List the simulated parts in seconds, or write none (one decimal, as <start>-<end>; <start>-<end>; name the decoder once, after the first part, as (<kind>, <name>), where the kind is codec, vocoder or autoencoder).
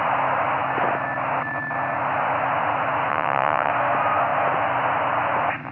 3.1-3.7 (vocoder, WaveNeXt)